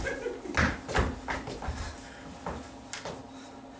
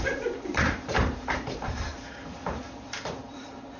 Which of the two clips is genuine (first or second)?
first